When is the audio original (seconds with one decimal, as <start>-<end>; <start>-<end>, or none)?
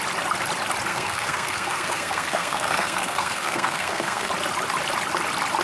0.0-0.9; 4.3-5.6